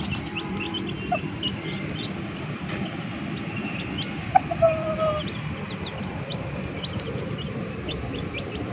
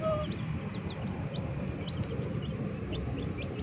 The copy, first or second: first